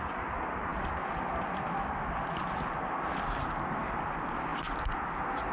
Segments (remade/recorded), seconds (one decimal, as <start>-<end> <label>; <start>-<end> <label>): 0.0-5.5 recorded